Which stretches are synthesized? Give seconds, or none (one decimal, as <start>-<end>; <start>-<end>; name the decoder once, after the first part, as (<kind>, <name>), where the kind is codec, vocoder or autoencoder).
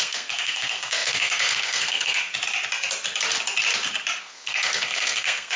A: 0.0-2.3 (codec, SNAC); 4.2-5.6